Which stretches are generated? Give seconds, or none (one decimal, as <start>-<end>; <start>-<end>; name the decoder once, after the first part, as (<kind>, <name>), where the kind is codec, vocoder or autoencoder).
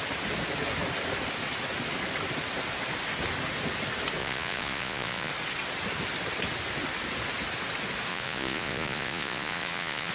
4.2-5.3 (vocoder, Vocos); 8.1-10.1